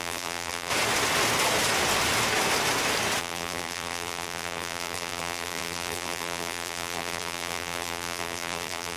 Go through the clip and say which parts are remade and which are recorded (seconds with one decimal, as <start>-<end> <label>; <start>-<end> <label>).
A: 0.0-0.7 remade; 0.7-3.2 recorded; 3.2-9.0 remade